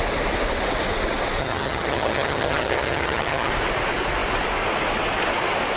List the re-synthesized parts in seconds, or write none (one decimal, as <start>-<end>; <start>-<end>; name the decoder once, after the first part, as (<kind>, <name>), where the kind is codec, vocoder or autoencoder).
1.4-3.5 (vocoder, HiFi-GAN)